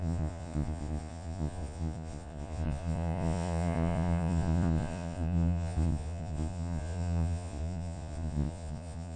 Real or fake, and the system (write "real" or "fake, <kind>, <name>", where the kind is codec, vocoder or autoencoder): fake, vocoder, Vocos